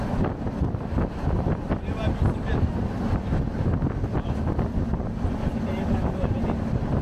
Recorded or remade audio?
recorded